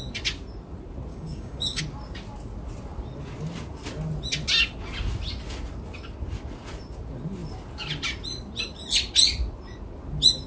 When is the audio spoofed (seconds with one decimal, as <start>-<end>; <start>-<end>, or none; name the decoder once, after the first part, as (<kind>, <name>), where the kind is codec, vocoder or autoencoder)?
1.1-1.8 (codec, DAC)